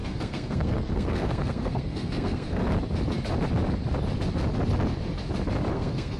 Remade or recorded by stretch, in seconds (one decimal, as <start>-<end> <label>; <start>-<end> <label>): 0.0-2.6 remade; 2.6-5.7 recorded; 5.7-6.2 remade